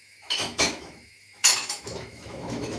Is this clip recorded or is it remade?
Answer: remade